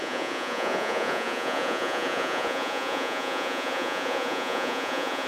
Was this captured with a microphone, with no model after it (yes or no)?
no